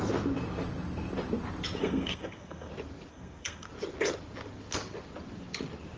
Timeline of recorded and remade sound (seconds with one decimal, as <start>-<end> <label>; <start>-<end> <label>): 0.0-1.8 recorded; 1.8-2.7 remade; 2.7-3.1 recorded; 3.1-3.7 remade; 3.7-6.0 recorded